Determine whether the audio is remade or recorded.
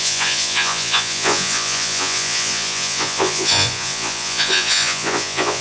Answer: remade